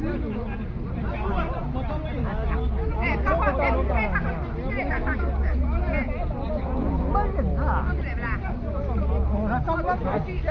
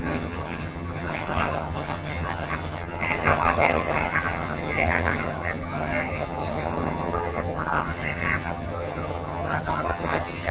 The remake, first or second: second